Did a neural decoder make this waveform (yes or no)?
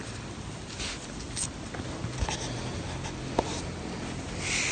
no